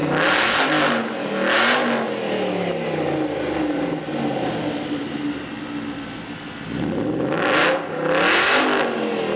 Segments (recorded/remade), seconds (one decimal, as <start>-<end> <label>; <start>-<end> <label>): 0.0-9.4 recorded